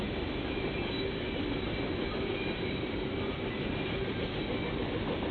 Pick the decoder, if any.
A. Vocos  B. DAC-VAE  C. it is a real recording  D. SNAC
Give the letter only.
C